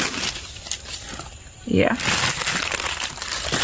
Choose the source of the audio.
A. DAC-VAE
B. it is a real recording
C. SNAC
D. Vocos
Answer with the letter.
B